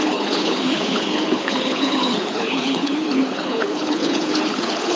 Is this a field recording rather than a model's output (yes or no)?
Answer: no